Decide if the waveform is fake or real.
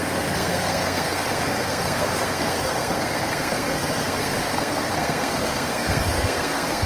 fake